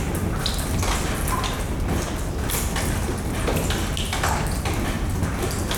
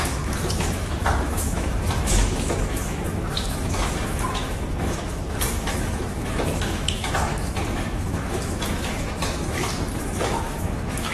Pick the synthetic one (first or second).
second